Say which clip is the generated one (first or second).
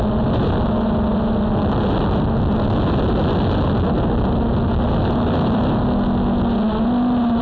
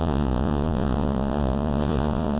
second